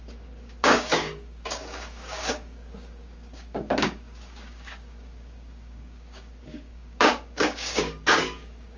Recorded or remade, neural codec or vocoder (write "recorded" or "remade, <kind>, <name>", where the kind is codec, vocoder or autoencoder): remade, codec, DAC